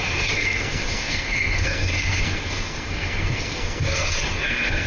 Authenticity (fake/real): fake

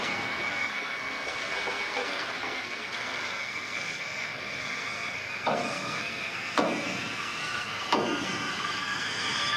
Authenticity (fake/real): fake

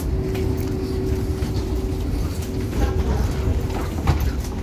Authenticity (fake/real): real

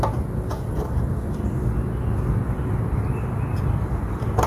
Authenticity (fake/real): real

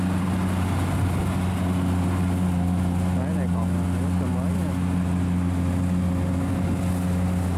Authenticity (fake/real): real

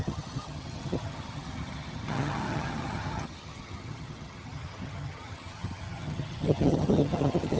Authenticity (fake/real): fake